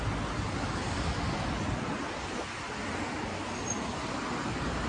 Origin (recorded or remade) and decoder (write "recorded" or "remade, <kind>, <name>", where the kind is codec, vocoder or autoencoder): recorded